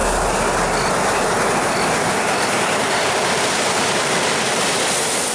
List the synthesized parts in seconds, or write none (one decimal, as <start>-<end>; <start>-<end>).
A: none